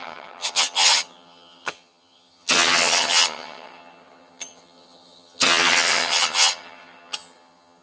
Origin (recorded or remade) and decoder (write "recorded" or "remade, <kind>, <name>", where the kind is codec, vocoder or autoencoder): remade, vocoder, HiFi-GAN